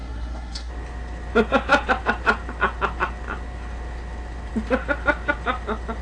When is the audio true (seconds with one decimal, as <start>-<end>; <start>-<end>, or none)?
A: 0.7-6.0